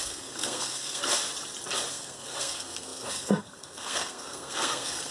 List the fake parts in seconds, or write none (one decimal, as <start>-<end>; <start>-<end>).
0.0-1.1; 1.9-5.1